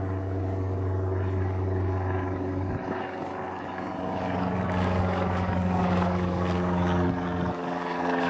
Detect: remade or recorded remade